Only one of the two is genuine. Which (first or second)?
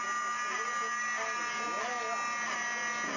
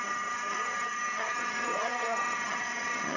first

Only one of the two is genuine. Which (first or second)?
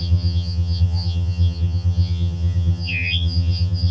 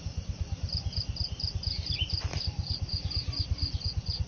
second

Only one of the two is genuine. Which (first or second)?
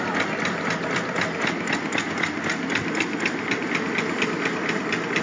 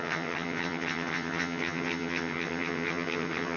first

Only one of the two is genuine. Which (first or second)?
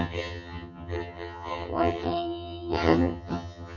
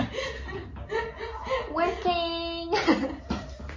second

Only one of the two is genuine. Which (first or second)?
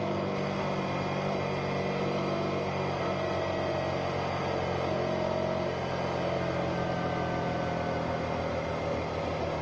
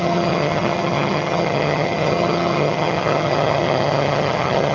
first